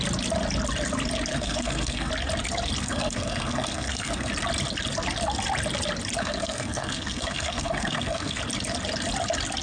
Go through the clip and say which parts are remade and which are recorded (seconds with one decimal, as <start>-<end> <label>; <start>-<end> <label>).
0.0-1.3 recorded; 1.3-2.1 remade; 2.1-2.8 recorded; 2.8-4.3 remade; 4.3-6.2 recorded; 6.2-8.4 remade; 8.4-9.6 recorded